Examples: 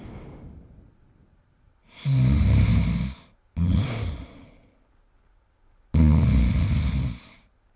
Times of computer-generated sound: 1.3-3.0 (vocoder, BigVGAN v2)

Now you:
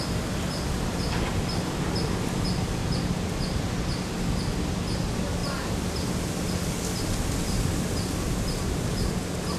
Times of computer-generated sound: none

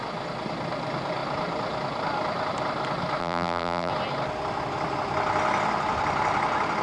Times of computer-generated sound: 3.2-3.9 (vocoder, BigVGAN v2)